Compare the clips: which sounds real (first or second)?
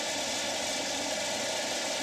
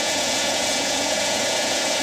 first